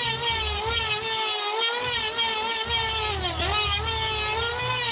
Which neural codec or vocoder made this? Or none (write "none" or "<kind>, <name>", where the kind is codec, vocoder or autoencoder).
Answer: none